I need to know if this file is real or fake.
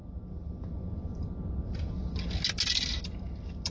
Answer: real